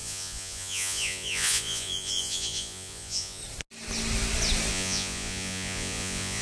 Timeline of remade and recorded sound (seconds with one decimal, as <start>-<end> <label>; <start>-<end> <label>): 0.0-3.4 remade; 3.4-4.7 recorded; 4.7-6.4 remade